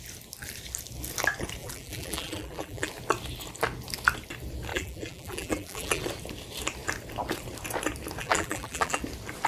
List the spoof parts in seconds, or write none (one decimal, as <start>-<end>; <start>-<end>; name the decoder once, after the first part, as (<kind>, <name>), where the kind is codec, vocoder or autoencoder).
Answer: 1.6-2.9 (vocoder, BigVGAN v2); 4.7-6.0; 8.2-9.0